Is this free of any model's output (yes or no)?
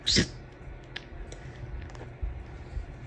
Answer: yes